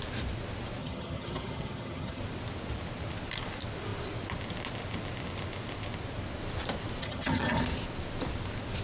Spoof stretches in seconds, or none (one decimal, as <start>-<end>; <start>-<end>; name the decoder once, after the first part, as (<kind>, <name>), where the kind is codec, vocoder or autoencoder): 0.8-2.2 (vocoder, HiFi-GAN); 7.0-7.6